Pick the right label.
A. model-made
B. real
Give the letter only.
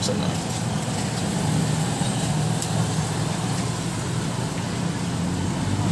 B